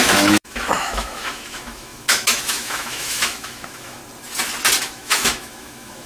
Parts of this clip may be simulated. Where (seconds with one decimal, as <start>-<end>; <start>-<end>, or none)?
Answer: 0.0-4.0; 4.8-6.1